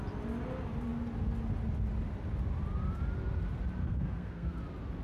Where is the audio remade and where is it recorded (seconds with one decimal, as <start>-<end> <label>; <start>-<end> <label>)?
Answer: 0.0-3.8 recorded; 3.8-4.6 remade; 4.6-5.0 recorded